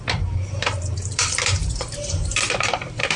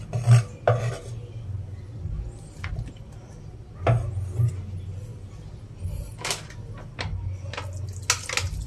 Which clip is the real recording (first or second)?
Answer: second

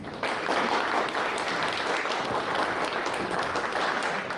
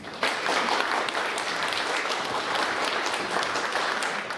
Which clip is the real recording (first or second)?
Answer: first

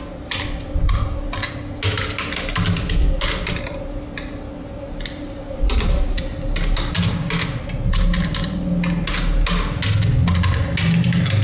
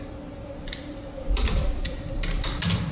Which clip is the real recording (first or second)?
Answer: first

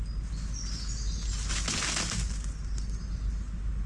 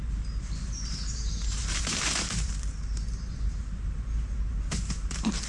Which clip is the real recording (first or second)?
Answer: first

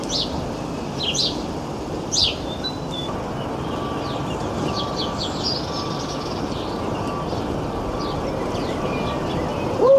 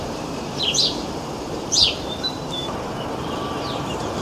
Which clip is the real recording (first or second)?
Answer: first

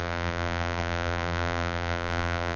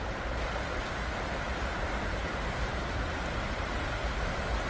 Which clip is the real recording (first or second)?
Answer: second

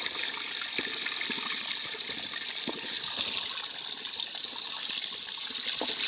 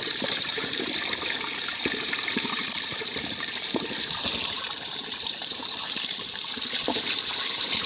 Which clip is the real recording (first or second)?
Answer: first